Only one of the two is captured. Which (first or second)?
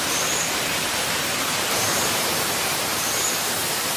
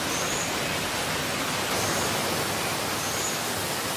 second